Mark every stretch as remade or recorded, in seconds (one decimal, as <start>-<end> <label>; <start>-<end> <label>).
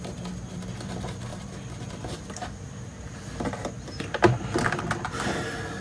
0.0-5.8 recorded